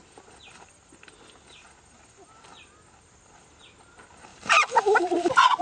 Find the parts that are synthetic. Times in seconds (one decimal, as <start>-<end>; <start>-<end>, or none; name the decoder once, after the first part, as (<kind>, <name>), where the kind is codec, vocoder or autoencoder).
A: 4.3-5.6 (vocoder, BigVGAN v2)